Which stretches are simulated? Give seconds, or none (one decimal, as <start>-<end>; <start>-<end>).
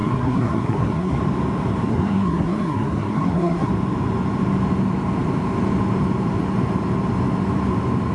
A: 0.0-1.2; 1.9-3.7